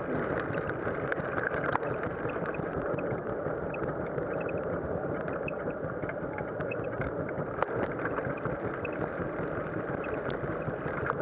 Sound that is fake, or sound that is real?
fake